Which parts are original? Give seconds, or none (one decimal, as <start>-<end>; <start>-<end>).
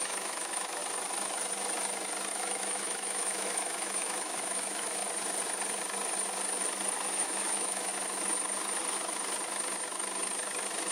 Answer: 0.8-2.3; 5.0-7.1; 7.9-10.9